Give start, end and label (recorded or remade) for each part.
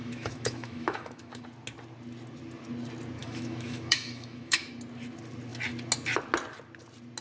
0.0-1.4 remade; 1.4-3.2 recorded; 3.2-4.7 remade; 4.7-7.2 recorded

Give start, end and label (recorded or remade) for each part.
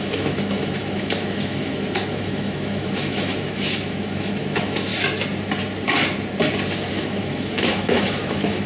0.0-4.9 remade; 4.9-6.9 recorded; 6.9-8.7 remade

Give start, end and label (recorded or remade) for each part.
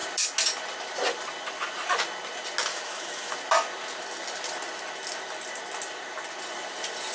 0.0-2.7 recorded; 2.7-3.3 remade; 3.3-7.1 recorded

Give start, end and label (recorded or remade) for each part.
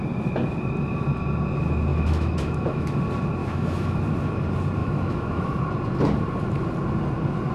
0.0-1.9 recorded; 1.9-3.0 remade; 3.0-3.4 recorded; 3.4-4.0 remade; 4.0-4.8 recorded; 4.8-5.6 remade; 5.6-7.5 recorded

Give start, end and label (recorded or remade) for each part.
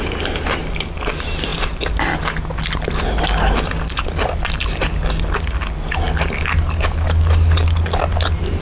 0.0-8.6 recorded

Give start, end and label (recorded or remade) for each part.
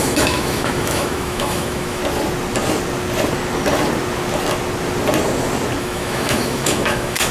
0.0-2.0 remade; 2.0-5.8 recorded; 5.8-7.3 remade